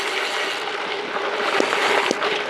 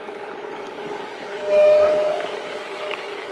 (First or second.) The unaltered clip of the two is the first